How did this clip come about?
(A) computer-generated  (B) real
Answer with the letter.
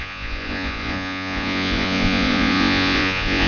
A